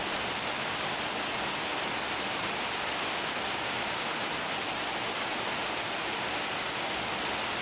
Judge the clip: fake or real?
real